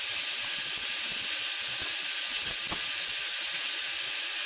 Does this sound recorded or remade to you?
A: recorded